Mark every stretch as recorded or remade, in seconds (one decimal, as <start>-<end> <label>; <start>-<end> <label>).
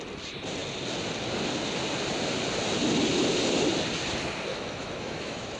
0.0-4.5 recorded; 4.5-5.6 remade